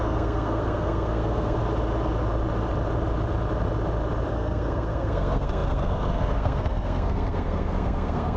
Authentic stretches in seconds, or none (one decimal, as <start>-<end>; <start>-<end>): 1.6-4.3